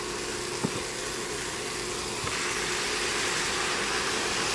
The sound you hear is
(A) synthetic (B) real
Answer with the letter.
B